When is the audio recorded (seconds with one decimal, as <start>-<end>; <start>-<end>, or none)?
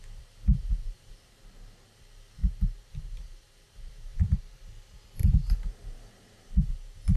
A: 0.0-0.5; 1.1-2.4; 4.4-5.2; 6.7-7.2